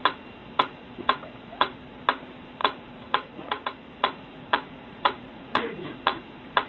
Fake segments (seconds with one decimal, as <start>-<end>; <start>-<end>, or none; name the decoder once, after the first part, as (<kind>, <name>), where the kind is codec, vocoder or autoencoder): 0.4-2.0 (vocoder, Vocos); 2.6-6.7